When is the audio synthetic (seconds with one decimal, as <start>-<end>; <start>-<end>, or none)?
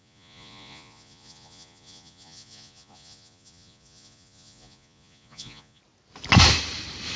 0.0-5.8